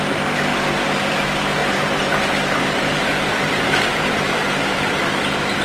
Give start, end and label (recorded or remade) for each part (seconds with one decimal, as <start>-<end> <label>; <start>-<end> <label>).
0.0-1.6 recorded; 1.6-5.0 remade; 5.0-5.6 recorded